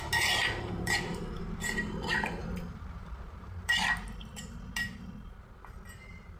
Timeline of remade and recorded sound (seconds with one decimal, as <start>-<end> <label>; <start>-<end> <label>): 0.0-0.4 recorded; 0.4-1.8 remade; 1.8-2.4 recorded; 2.4-3.7 remade; 3.7-6.4 recorded